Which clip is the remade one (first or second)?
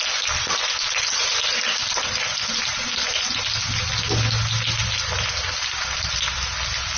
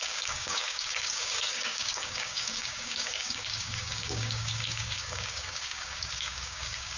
second